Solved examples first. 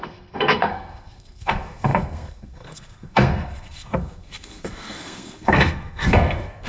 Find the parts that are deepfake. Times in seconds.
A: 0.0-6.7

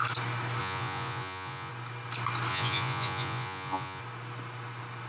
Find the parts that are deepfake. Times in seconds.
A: 0.6-1.7; 2.5-4.0

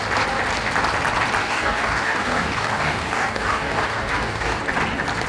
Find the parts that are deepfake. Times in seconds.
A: 1.4-4.6

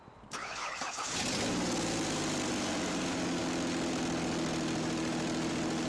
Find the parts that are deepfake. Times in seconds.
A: 0.4-1.1

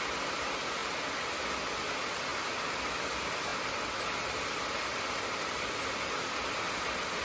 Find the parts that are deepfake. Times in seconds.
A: none

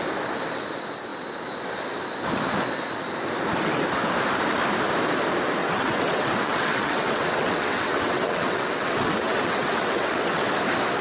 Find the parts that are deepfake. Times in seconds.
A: 5.6-10.5

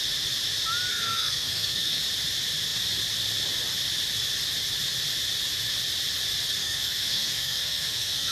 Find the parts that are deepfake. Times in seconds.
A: 0.9-2.0; 6.6-8.3

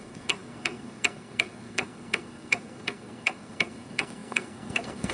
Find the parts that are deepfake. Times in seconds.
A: 0.0-5.1